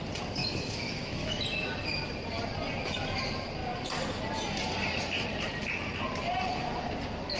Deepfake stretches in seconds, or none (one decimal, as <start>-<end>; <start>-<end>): 0.4-1.4

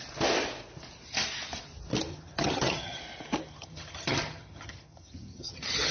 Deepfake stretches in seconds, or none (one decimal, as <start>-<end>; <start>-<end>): 2.1-3.0; 3.5-5.9

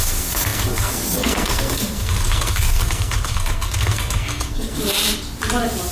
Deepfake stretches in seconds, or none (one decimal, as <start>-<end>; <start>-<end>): 0.0-4.8